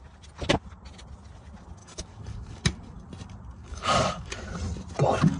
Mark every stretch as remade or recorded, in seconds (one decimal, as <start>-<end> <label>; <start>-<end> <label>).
0.0-1.8 recorded; 1.8-2.6 remade; 2.6-3.6 recorded; 3.6-4.5 remade; 4.5-5.4 recorded

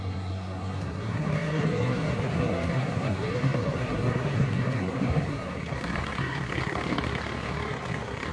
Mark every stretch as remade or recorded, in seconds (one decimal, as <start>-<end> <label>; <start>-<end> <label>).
0.0-8.3 remade

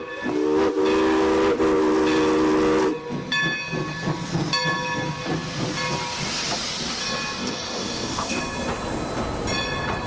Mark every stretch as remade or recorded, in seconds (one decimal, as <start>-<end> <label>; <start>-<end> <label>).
0.0-7.4 recorded; 7.4-8.4 remade; 8.4-10.1 recorded

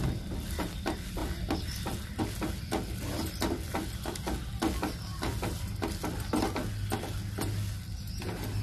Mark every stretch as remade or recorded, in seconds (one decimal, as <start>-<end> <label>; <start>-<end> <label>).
0.0-8.6 recorded

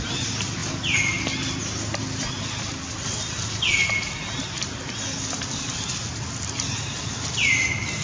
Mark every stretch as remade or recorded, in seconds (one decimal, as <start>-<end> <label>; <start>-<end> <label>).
0.0-8.0 recorded

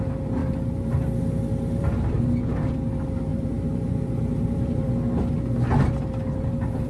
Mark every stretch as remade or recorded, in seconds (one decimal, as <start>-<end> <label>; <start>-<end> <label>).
0.0-3.3 recorded; 3.3-4.9 remade; 4.9-6.9 recorded

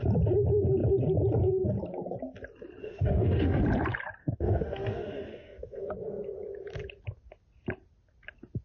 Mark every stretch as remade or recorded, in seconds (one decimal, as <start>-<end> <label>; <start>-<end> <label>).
0.0-2.8 recorded; 2.8-3.6 remade; 3.6-4.2 recorded; 4.2-5.9 remade; 5.9-8.6 recorded

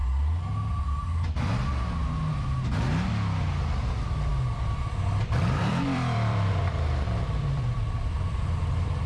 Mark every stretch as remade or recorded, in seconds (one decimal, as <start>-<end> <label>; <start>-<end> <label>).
0.0-4.3 recorded; 4.3-9.1 remade